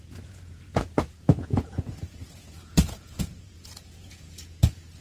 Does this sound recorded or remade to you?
remade